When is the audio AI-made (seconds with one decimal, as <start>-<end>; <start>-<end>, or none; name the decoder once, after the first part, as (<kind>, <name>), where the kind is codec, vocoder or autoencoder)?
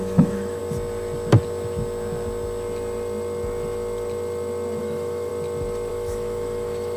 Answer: 0.0-0.6 (autoencoder, DAC-VAE); 4.8-5.3; 5.9-7.0